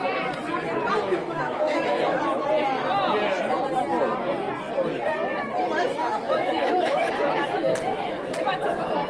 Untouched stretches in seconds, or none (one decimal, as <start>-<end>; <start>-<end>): 0.0-1.0; 2.2-5.9; 7.1-9.1